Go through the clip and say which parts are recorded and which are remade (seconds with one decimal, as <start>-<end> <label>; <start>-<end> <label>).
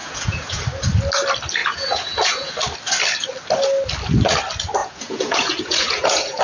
0.0-0.6 remade; 0.6-1.6 recorded; 1.6-2.5 remade; 2.5-4.8 recorded; 4.8-6.4 remade